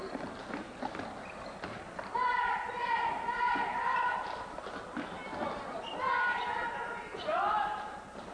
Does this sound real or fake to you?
real